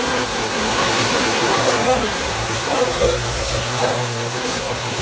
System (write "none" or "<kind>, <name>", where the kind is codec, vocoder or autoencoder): codec, SNAC